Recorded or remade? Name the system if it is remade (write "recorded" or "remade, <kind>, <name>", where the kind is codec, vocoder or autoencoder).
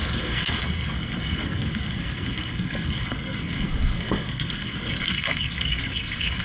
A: remade, codec, SNAC